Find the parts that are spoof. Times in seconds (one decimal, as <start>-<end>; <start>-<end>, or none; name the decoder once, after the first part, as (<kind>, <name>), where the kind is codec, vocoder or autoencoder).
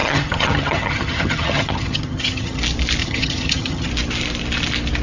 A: 0.0-2.6 (vocoder, HiFi-GAN); 3.0-3.9